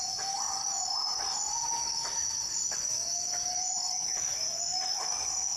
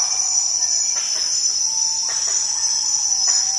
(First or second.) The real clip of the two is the second